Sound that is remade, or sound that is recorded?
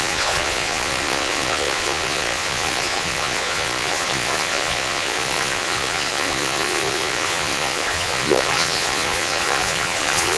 remade